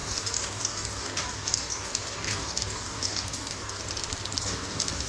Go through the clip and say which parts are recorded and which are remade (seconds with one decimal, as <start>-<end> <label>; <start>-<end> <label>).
0.0-3.8 remade; 3.8-4.4 recorded; 4.4-5.1 remade